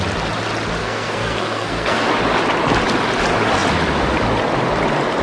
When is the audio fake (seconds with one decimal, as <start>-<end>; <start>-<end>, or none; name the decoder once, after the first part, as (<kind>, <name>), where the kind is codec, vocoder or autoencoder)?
0.8-2.1 (codec, SNAC)